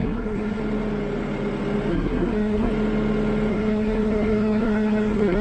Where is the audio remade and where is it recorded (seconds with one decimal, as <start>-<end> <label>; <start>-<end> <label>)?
0.0-0.6 remade; 0.6-1.9 recorded; 1.9-2.7 remade; 2.7-3.5 recorded; 3.5-5.4 remade